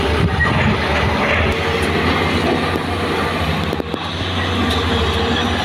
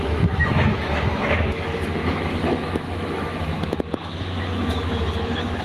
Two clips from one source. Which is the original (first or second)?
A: first